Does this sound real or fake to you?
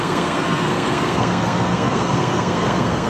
fake